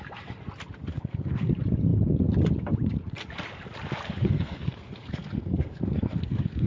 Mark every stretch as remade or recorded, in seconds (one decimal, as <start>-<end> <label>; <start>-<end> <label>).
0.0-0.9 recorded; 0.9-1.5 remade; 1.5-4.2 recorded; 4.2-6.7 remade